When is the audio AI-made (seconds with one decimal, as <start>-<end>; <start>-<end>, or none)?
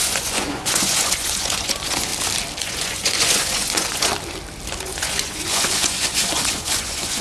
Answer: 0.0-2.1; 2.6-4.1; 4.7-7.2